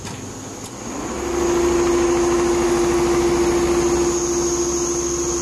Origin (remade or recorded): recorded